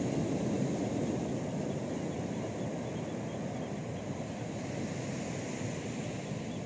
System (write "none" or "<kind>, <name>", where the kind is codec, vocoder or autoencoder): none